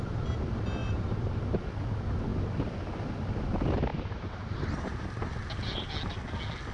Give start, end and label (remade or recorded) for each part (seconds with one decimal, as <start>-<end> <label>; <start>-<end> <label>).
0.0-0.8 recorded; 0.8-1.7 remade; 1.7-3.9 recorded; 3.9-5.1 remade; 5.1-6.7 recorded